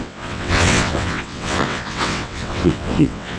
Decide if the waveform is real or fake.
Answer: fake